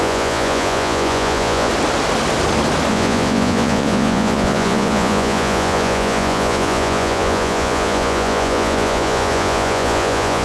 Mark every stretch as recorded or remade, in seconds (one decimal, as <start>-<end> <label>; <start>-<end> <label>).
0.0-1.7 remade; 1.7-2.9 recorded; 2.9-10.4 remade